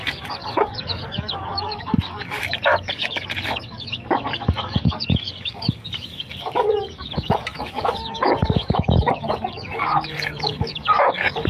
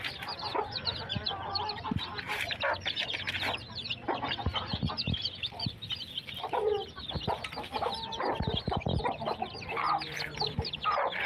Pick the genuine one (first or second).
second